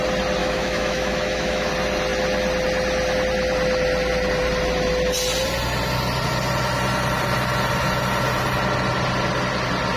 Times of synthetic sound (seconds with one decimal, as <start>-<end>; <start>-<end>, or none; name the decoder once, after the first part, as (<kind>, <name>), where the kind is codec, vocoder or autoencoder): 0.4-1.7 (autoencoder, DAC-VAE)